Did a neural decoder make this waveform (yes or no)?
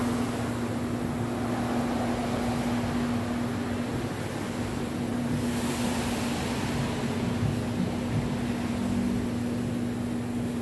no